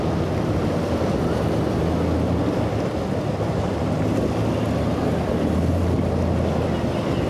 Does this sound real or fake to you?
real